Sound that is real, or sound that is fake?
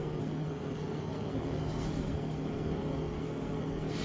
fake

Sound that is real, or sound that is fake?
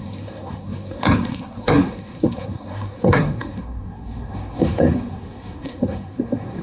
fake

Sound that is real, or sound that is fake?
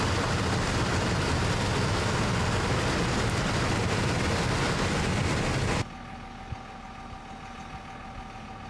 real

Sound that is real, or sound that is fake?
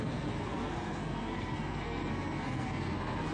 fake